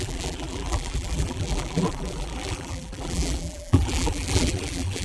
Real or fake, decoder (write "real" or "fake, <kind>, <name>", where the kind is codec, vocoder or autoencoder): fake, vocoder, BigVGAN v2